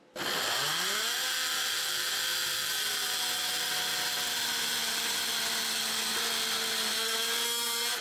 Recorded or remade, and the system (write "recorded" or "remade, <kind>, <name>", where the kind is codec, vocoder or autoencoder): recorded